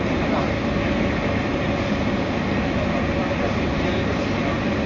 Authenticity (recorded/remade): recorded